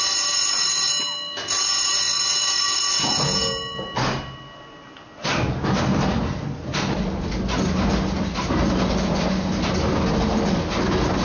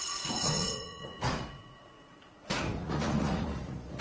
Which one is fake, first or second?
second